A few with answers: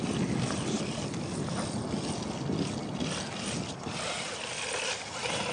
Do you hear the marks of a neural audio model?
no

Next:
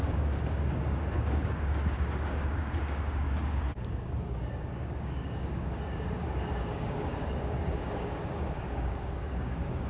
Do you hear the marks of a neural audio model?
yes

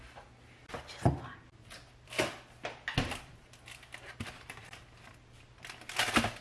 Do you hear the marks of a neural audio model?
no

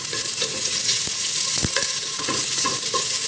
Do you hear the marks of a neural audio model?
yes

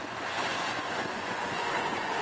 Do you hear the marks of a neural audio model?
yes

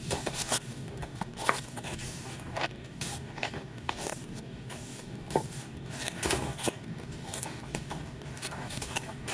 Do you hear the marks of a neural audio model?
yes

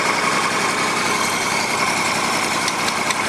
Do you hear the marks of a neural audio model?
no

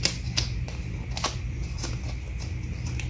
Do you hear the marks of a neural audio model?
no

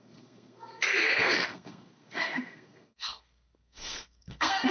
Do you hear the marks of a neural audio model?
yes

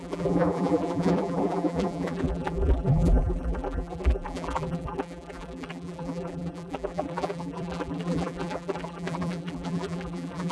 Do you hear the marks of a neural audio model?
yes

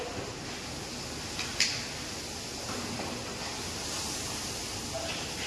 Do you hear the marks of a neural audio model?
no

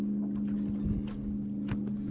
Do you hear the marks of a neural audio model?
no